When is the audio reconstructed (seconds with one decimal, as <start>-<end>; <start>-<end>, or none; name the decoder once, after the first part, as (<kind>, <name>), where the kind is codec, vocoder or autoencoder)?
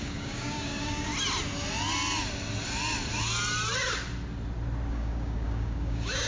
0.0-1.1 (codec, DAC); 4.9-6.3